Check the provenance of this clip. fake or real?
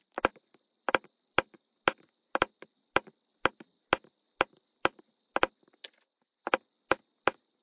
real